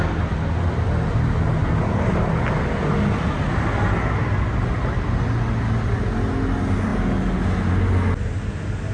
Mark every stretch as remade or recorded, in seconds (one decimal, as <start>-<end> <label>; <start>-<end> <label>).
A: 0.0-8.9 recorded